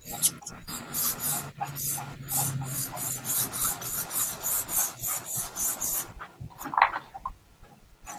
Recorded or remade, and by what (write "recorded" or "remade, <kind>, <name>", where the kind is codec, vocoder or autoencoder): recorded